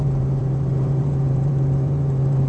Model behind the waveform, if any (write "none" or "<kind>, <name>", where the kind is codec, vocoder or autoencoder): vocoder, BigVGAN v2